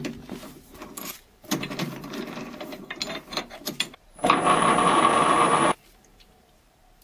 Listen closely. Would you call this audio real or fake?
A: fake